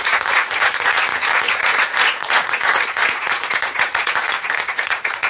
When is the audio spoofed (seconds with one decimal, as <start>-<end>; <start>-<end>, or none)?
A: 0.0-5.3